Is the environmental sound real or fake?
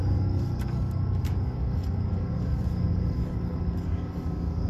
fake